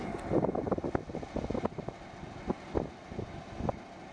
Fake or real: real